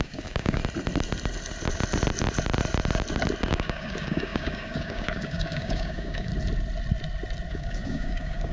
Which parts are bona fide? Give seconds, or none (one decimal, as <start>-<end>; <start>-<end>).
0.6-3.5; 6.3-7.5